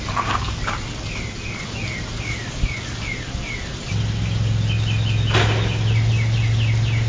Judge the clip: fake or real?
real